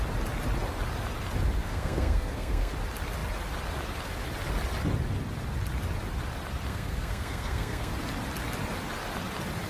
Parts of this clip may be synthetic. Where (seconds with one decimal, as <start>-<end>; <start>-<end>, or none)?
1.6-2.7; 6.7-7.9